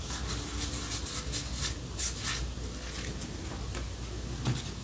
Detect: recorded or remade recorded